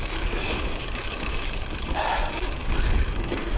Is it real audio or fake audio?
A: fake